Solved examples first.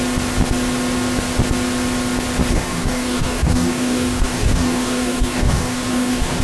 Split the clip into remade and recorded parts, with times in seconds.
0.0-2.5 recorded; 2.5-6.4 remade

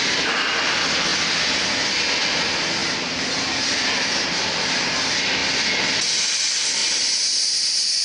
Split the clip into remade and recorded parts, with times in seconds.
0.0-8.0 recorded

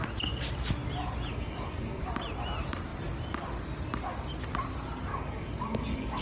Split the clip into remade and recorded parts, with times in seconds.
0.0-1.3 recorded; 1.3-2.0 remade; 2.0-5.1 recorded; 5.1-6.2 remade

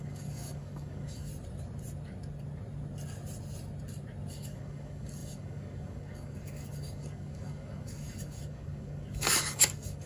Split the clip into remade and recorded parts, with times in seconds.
0.0-1.3 remade; 1.3-4.3 recorded; 4.3-10.1 remade

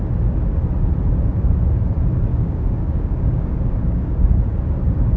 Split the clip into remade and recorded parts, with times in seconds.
0.0-2.3 recorded; 2.3-4.4 remade; 4.4-5.2 recorded